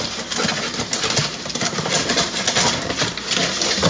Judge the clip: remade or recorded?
recorded